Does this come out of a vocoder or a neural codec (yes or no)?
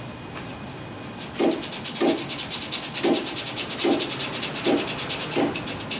no